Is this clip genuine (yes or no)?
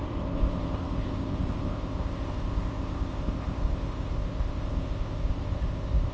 no